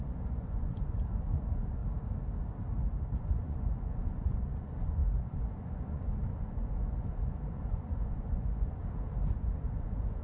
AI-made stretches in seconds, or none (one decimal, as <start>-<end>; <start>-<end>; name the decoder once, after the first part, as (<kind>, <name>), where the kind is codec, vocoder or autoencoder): 0.0-1.8 (vocoder, Vocos); 3.2-8.8; 9.3-10.2